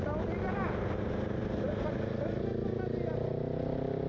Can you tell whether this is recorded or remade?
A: recorded